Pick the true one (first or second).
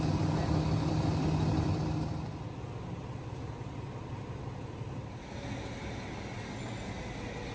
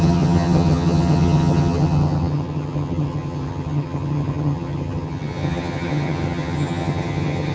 first